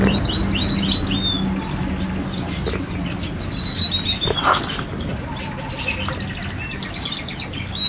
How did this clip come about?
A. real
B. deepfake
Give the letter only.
A